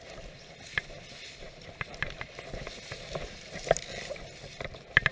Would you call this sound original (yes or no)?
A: yes